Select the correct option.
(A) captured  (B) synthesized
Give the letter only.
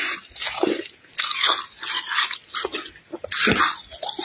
A